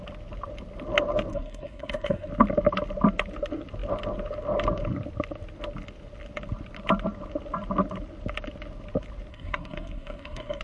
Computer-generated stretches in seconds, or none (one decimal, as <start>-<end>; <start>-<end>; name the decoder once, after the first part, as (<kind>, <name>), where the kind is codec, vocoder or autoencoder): 1.3-2.3 (codec, SNAC); 9.3-10.6